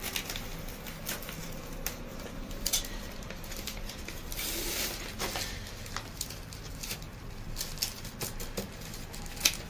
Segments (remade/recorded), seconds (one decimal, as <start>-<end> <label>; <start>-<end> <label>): 0.0-1.4 recorded; 1.4-4.2 remade; 4.2-9.7 recorded